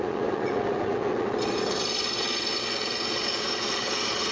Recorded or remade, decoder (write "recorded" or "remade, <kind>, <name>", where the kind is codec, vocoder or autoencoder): remade, vocoder, Vocos